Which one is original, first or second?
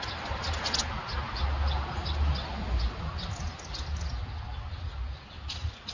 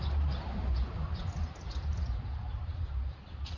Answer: first